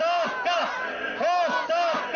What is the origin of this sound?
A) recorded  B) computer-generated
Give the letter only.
A